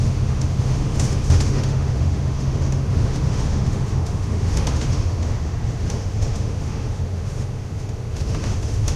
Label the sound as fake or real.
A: fake